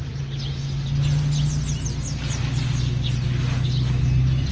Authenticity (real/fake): real